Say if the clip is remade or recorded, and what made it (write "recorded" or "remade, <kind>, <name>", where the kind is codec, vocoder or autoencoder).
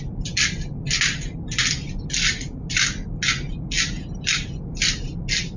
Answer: recorded